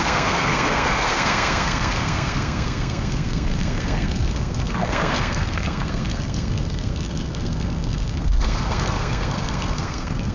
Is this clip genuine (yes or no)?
no